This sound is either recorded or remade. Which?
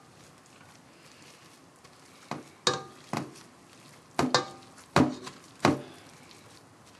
recorded